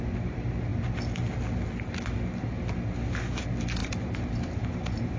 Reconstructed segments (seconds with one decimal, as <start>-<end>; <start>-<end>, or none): 3.8-5.2